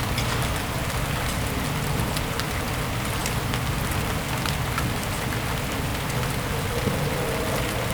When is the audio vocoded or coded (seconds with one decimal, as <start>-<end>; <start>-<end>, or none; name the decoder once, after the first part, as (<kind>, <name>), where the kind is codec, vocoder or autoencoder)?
none